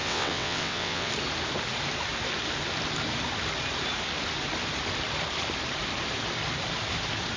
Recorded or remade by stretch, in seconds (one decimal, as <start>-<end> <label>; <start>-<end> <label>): 0.0-1.1 remade; 1.1-7.4 recorded

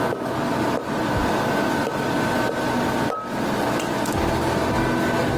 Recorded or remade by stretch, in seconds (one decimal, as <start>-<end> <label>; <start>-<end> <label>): 0.0-5.4 recorded

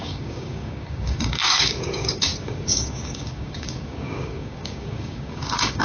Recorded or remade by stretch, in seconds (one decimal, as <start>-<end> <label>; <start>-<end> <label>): 0.0-5.8 remade